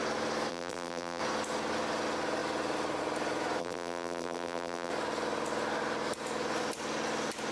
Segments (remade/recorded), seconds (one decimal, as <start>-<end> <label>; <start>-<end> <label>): 0.0-0.5 recorded; 0.5-1.2 remade; 1.2-3.6 recorded; 3.6-4.9 remade; 4.9-7.5 recorded